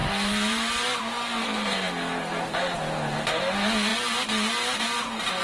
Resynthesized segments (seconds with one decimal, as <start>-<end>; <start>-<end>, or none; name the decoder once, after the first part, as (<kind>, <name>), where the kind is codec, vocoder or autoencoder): 0.0-2.4 (vocoder, BigVGAN v2)